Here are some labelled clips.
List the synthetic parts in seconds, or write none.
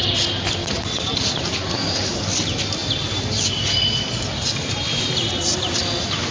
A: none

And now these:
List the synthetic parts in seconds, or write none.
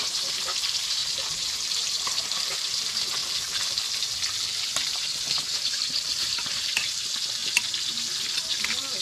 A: 0.0-3.2 (vocoder, BigVGAN v2); 4.6-7.4